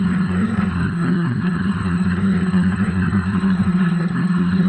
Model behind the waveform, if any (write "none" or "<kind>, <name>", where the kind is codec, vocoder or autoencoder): codec, SNAC